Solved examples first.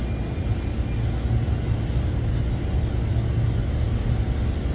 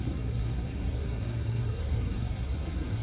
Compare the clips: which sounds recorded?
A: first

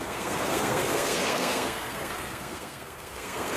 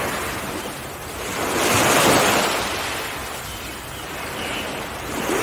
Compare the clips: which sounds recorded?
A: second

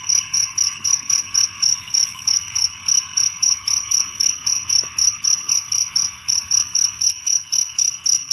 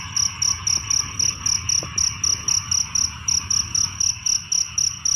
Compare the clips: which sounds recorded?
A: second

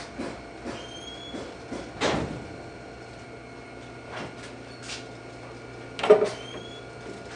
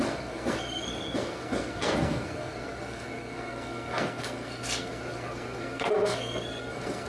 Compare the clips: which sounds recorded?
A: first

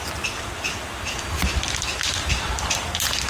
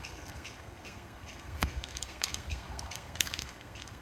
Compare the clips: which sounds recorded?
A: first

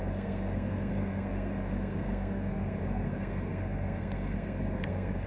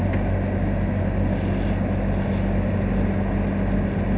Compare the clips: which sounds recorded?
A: second